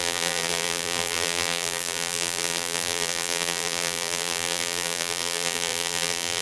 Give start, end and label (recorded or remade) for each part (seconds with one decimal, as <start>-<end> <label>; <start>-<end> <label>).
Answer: 0.0-6.4 remade